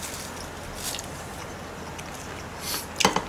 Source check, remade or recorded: recorded